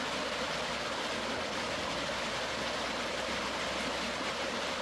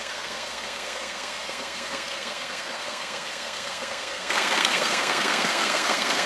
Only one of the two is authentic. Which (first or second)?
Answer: first